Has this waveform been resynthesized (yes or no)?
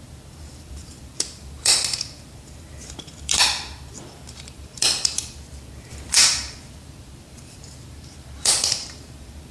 yes